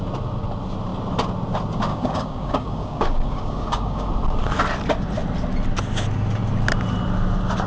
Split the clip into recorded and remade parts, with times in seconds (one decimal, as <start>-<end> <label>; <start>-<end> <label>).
0.0-1.9 recorded; 1.9-4.1 remade; 4.1-7.7 recorded